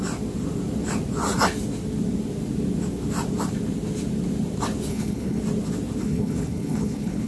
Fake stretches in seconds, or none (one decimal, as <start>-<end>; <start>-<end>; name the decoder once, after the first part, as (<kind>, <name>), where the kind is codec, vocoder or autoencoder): 4.9-5.4 (codec, HILCodec); 6.0-7.3